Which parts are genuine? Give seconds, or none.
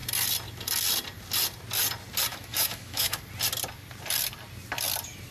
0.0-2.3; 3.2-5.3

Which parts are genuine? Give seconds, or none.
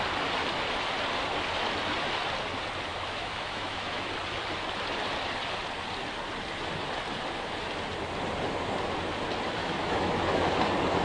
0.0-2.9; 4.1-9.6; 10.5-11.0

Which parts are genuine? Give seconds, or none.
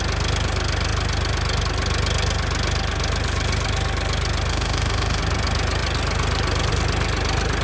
0.0-4.5; 5.2-7.6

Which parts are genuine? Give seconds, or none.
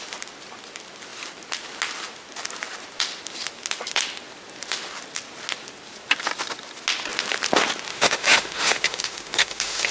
0.0-7.9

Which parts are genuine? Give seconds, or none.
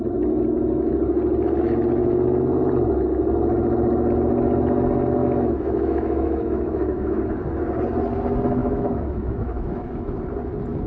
0.0-5.2; 7.2-8.6; 10.2-10.9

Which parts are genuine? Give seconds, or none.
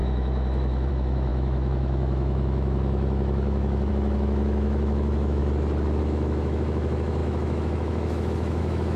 5.4-6.0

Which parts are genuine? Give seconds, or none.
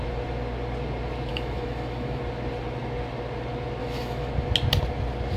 0.0-1.3; 2.2-3.8; 4.3-5.4